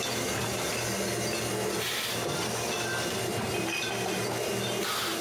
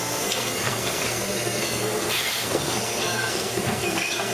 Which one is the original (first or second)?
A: first